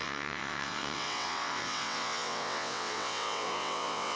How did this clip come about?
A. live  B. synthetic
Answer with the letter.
B